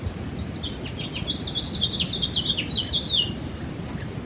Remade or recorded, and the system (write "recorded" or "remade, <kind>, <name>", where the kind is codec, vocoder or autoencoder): recorded